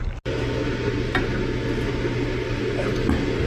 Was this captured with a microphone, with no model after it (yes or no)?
yes